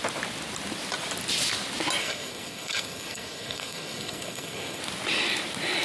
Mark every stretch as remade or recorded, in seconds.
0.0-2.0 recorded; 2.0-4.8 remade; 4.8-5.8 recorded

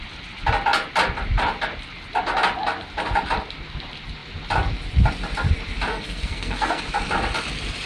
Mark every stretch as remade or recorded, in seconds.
0.0-5.9 recorded; 5.9-6.8 remade; 6.8-7.9 recorded

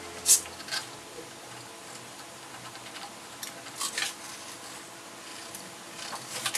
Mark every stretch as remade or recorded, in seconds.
0.0-6.6 recorded

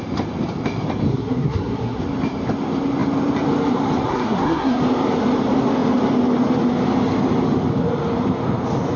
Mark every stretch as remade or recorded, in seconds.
0.0-1.1 recorded; 1.1-2.0 remade; 2.0-4.1 recorded; 4.1-4.8 remade; 4.8-9.0 recorded

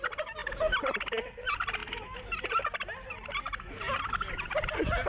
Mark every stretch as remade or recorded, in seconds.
0.0-5.1 recorded

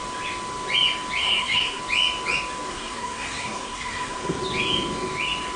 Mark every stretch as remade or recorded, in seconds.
0.0-1.2 recorded; 1.2-1.8 remade; 1.8-2.7 recorded; 2.7-4.4 remade; 4.4-5.6 recorded